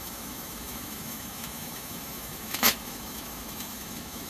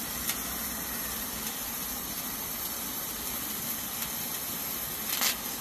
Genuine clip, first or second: second